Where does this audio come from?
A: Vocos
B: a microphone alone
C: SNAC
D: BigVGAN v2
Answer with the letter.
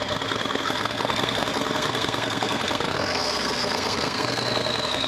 C